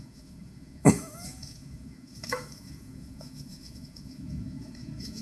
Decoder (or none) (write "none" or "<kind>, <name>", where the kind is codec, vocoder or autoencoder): autoencoder, DAC-VAE